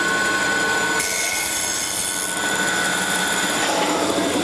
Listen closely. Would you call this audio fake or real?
real